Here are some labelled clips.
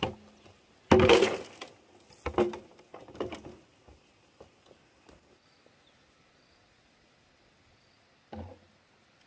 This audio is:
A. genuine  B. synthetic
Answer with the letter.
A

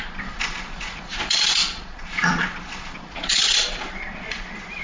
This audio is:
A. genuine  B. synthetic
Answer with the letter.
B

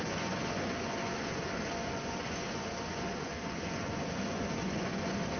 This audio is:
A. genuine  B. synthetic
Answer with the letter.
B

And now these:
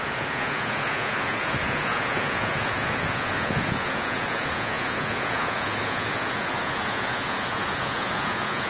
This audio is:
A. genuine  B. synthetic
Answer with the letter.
B